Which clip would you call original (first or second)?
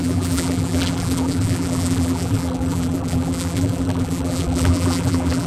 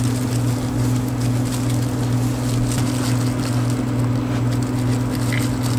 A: second